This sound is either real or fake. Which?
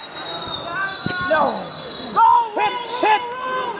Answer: real